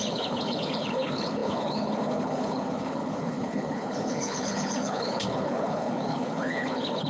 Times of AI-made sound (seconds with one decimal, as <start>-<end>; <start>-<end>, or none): 0.0-7.1